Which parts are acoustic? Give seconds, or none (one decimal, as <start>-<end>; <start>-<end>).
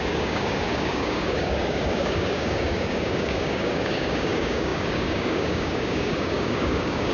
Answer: none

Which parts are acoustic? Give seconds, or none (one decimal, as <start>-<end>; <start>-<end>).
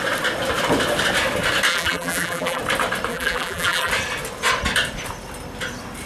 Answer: 0.0-1.7; 2.6-3.1; 3.9-6.0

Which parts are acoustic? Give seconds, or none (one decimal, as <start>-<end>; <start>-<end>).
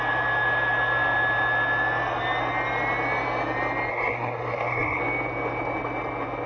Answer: 0.0-3.9; 5.0-6.5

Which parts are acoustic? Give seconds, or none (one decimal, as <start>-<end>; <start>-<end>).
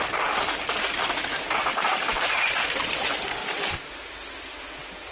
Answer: 0.0-1.7; 2.2-3.4; 3.9-5.1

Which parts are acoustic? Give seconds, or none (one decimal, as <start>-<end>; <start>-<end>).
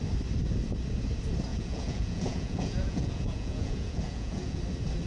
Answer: 0.0-1.5; 4.6-5.1